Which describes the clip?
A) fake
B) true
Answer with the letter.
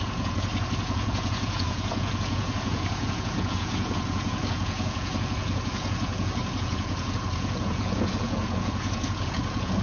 A